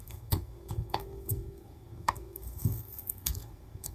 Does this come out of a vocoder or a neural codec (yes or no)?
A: yes